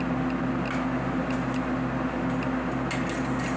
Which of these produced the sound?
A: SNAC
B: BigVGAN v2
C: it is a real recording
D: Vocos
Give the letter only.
C